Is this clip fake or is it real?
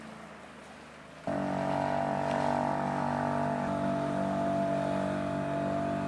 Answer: real